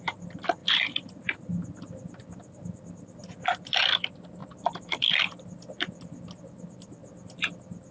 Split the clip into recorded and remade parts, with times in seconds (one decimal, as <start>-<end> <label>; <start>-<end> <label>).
0.0-7.9 recorded